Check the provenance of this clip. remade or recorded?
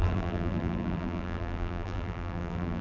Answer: remade